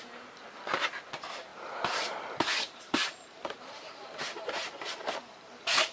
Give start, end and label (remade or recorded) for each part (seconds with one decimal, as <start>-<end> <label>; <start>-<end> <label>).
0.0-5.9 remade